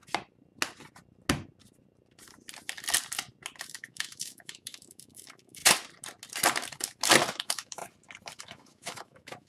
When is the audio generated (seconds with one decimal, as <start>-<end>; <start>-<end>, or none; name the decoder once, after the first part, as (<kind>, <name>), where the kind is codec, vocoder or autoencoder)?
3.6-5.6 (autoencoder, DAC-VAE); 7.3-7.8; 8.4-9.5